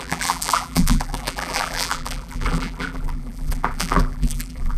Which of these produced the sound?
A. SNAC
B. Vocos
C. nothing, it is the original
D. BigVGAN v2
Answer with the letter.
D